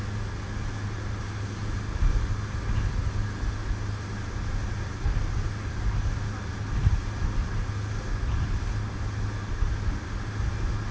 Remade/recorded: recorded